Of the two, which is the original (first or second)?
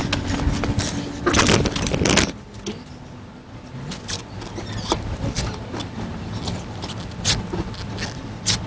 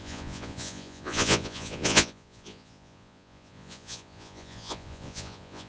first